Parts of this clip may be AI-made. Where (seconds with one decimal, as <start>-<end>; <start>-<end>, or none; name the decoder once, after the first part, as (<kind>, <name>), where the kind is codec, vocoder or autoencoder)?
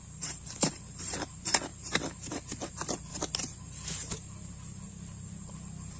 none